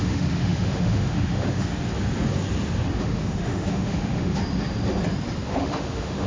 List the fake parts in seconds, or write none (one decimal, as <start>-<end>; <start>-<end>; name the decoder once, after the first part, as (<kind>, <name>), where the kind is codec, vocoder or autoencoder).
0.0-1.7 (autoencoder, DAC-VAE); 3.0-4.4; 5.5-6.3